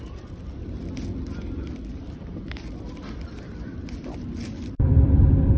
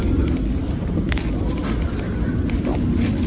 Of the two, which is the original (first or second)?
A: second